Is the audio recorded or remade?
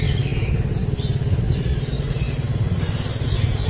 recorded